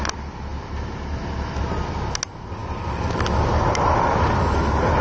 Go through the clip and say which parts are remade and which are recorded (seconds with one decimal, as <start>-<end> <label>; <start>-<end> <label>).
0.0-5.0 recorded